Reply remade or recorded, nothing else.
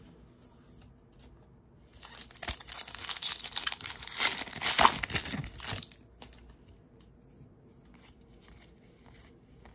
recorded